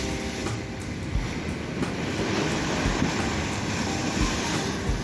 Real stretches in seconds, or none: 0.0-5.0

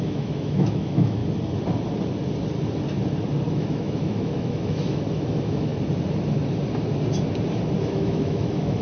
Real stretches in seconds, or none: 1.2-3.5; 5.7-7.8

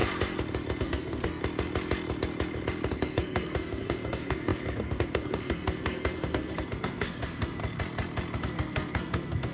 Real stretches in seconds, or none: 0.0-0.8; 1.4-2.9; 7.6-8.4

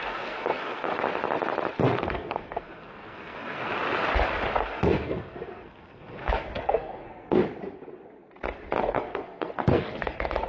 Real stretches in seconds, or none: 0.9-1.7; 3.7-4.6; 7.4-8.8

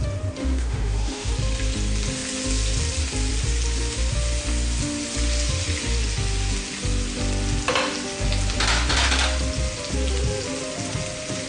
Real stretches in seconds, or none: 0.0-0.4; 1.3-11.5

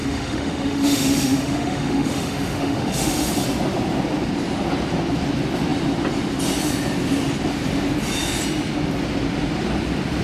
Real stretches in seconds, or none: 3.3-10.2

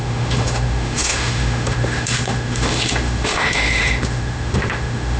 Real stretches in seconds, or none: none